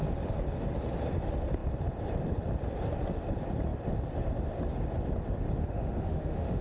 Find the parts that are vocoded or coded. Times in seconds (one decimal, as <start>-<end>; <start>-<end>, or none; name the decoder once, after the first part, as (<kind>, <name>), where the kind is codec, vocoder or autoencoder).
5.6-6.6 (autoencoder, DAC-VAE)